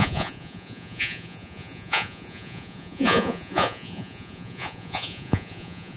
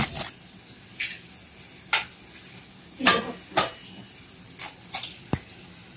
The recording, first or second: second